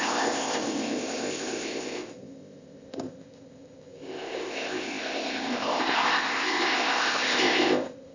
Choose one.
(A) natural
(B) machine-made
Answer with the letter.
B